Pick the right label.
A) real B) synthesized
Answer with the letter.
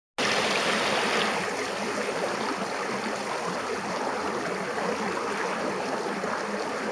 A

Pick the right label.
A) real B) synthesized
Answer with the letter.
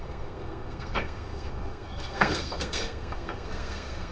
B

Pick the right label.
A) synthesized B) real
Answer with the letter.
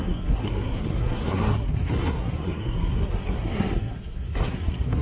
A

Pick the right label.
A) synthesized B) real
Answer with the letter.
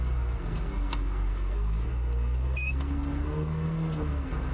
A